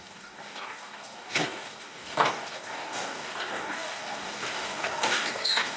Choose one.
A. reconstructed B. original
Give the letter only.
A